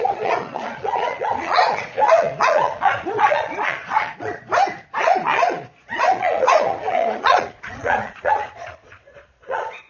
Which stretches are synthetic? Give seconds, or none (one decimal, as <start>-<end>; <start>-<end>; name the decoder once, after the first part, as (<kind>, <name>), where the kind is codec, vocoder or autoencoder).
0.0-4.5 (vocoder, Vocos); 5.0-9.9